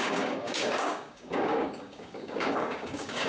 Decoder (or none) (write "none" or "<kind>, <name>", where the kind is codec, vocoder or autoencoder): codec, DAC